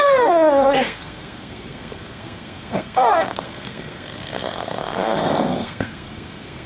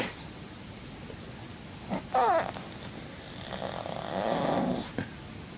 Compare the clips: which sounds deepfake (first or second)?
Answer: first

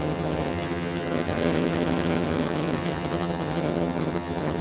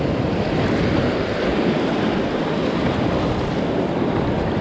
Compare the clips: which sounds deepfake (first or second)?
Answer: first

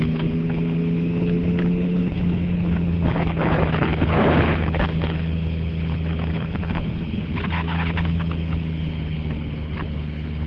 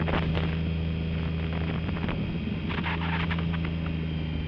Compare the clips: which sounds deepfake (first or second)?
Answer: first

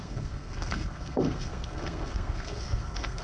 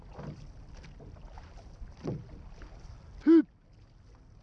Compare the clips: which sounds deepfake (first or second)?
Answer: first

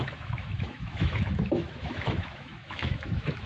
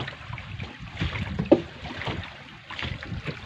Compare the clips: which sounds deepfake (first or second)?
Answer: first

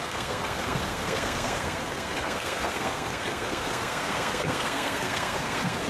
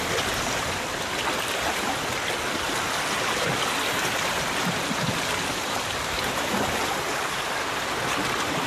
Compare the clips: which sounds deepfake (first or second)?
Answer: first